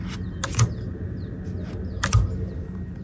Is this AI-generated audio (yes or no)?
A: no